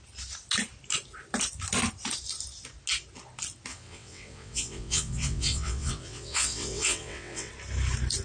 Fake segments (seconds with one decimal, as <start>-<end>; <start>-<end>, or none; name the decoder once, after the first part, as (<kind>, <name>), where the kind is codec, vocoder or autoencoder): 3.7-7.5 (vocoder, WaveNeXt)

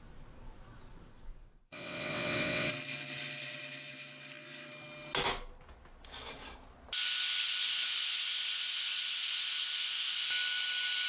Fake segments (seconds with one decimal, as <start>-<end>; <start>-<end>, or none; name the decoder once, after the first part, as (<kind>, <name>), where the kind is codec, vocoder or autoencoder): 1.7-2.7 (vocoder, WaveNeXt)

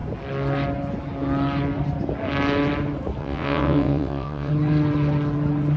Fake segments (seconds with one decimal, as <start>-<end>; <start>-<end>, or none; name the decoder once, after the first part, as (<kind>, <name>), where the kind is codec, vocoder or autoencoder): 3.2-4.5 (vocoder, WaveNeXt)